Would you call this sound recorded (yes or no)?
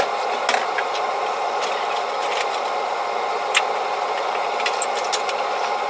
yes